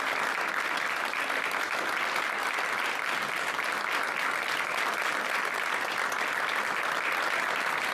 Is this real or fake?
real